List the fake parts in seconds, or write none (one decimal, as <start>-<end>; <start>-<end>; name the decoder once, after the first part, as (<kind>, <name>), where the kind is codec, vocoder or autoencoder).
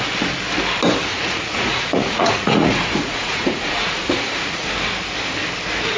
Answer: 1.1-4.7 (vocoder, Vocos)